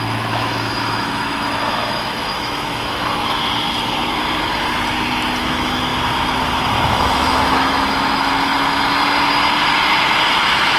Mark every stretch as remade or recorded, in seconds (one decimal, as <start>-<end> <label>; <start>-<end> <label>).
0.0-3.5 remade; 3.5-5.4 recorded; 5.4-5.9 remade; 5.9-6.5 recorded; 6.5-8.5 remade; 8.5-10.3 recorded; 10.3-10.8 remade